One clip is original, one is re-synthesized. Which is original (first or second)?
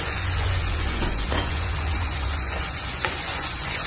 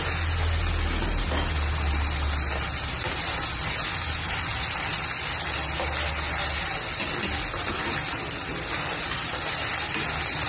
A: second